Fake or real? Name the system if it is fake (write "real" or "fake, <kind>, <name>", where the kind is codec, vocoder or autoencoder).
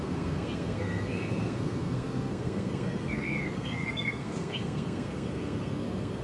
fake, codec, SNAC